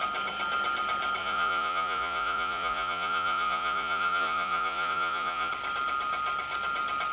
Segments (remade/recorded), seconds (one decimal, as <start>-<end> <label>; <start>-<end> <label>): 0.0-1.2 recorded; 1.2-5.5 remade; 5.5-7.1 recorded